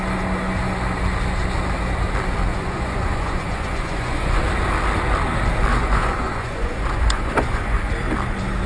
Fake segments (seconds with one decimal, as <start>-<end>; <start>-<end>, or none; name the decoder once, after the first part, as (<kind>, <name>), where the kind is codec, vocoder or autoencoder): 2.5-4.4 (vocoder, Vocos); 5.7-7.9